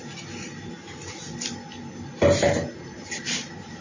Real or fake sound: real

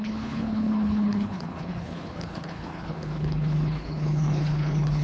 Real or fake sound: fake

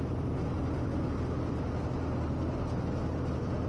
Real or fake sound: real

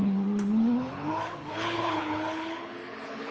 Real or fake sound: fake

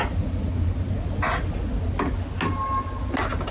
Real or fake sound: real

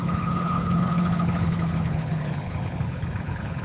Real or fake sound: fake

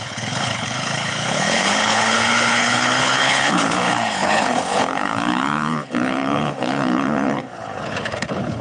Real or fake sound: fake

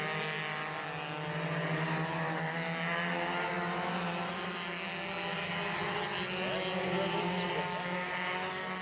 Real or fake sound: real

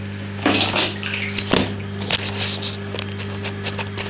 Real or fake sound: real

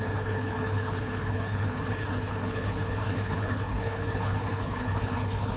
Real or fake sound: fake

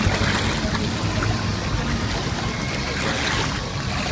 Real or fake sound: real